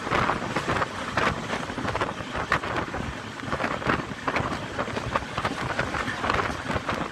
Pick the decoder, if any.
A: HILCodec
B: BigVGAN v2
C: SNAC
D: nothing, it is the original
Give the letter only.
D